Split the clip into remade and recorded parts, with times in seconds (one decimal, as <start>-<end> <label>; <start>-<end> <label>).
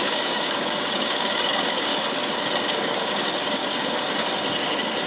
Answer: 0.0-1.9 remade; 1.9-2.8 recorded; 2.8-3.6 remade; 3.6-5.1 recorded